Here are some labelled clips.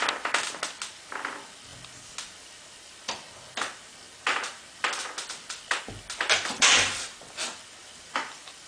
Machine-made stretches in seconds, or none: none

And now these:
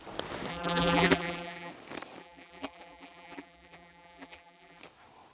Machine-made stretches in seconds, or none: 0.5-1.7 (vocoder, BigVGAN v2); 2.2-4.8

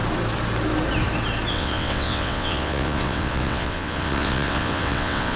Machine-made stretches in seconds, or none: 1.5-5.4 (vocoder, WaveNeXt)

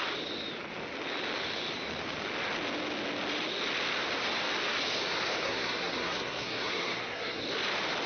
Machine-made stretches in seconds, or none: 5.4-7.4 (codec, SNAC)